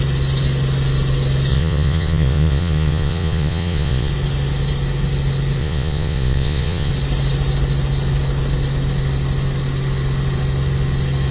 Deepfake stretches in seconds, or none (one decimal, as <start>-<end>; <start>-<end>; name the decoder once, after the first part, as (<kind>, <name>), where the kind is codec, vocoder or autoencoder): 1.5-4.1 (vocoder, Vocos); 5.6-6.9